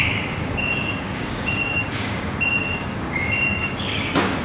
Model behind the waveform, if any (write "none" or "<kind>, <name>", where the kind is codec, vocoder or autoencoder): codec, DAC